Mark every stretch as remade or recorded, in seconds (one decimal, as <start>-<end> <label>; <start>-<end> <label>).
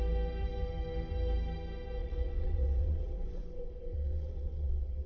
0.0-2.0 recorded; 2.0-5.1 remade